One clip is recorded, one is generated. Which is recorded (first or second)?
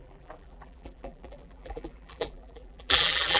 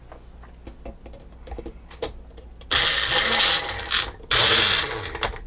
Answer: second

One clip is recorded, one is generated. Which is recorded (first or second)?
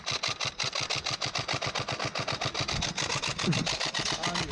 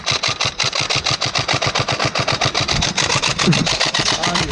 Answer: first